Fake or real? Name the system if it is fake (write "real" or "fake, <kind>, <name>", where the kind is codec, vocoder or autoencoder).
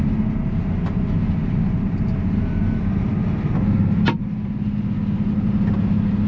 real